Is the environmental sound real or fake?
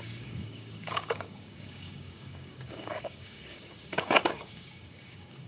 fake